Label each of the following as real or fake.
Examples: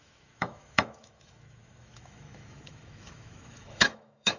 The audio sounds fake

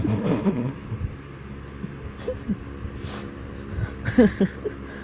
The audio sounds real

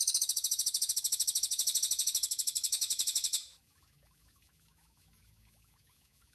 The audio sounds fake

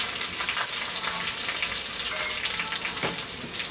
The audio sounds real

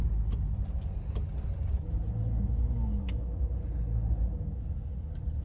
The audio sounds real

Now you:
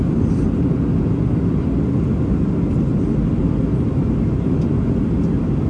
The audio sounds real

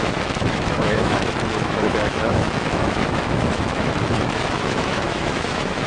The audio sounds fake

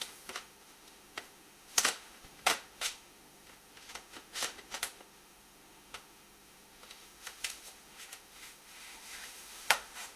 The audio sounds fake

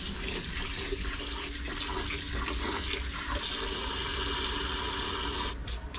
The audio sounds real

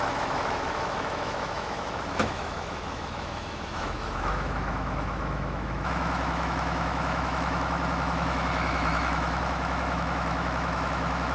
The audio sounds fake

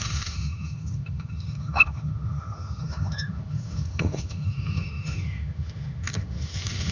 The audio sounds fake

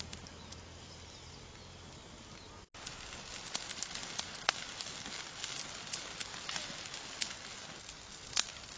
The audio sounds real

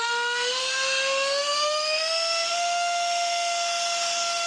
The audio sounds fake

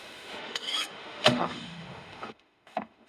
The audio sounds fake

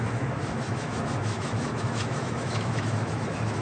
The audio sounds fake